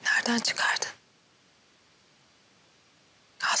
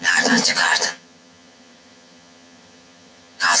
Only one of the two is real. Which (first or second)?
first